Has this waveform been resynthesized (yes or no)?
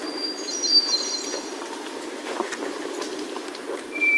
yes